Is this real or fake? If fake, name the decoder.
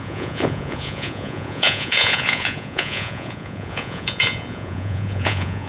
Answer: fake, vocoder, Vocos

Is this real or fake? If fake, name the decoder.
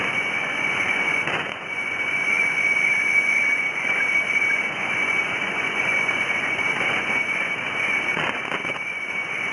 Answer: fake, vocoder, Vocos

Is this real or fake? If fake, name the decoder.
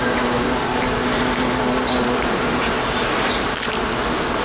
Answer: real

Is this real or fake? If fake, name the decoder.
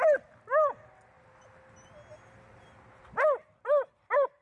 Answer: real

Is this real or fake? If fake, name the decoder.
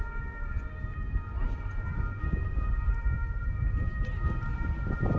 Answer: real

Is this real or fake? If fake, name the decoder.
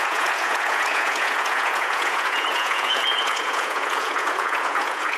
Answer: fake, vocoder, Vocos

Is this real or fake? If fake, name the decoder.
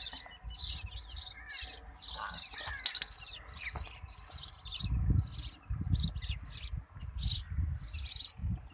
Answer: real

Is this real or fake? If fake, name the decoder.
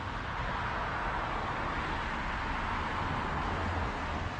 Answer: real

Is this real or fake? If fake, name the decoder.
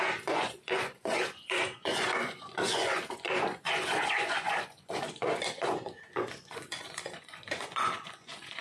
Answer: fake, vocoder, Vocos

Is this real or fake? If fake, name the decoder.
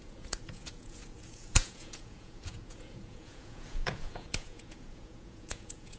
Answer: fake, vocoder, Vocos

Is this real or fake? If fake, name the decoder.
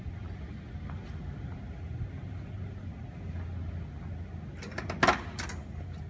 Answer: real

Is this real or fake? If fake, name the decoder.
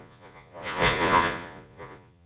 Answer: fake, vocoder, Vocos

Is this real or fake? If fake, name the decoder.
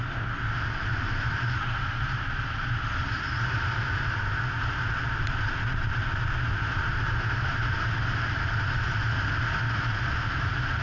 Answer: real